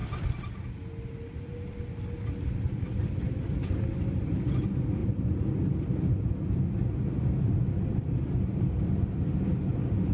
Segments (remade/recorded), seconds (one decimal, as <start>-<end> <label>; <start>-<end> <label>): 0.0-10.1 recorded